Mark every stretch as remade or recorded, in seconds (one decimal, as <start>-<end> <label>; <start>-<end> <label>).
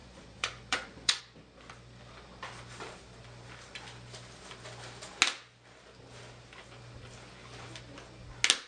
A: 0.0-1.2 remade; 1.2-8.7 recorded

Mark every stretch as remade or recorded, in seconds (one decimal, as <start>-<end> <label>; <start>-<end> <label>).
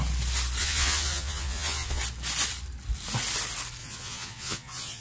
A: 0.0-0.6 recorded; 0.6-2.0 remade; 2.0-3.8 recorded; 3.8-5.0 remade